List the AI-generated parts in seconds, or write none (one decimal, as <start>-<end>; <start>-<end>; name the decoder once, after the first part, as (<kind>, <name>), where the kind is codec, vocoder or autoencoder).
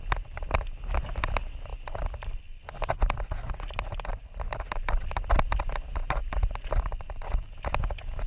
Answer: none